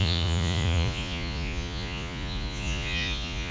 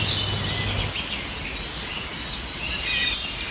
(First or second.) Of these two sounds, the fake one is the first